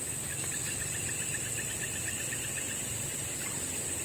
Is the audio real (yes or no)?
yes